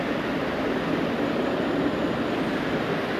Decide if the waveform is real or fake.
real